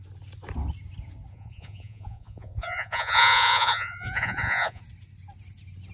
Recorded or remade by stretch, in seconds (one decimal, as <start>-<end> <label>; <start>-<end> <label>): 0.0-1.3 recorded; 1.3-4.8 remade; 4.8-5.9 recorded